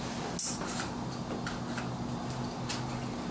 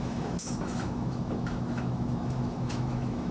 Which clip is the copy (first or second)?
second